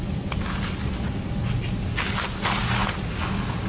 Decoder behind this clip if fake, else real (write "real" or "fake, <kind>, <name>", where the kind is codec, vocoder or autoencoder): real